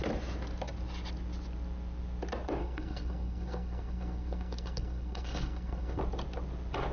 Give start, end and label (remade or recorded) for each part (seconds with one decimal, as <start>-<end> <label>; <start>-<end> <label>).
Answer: 0.0-2.6 recorded; 2.6-6.0 remade; 6.0-6.9 recorded